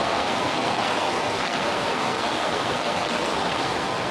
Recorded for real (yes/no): no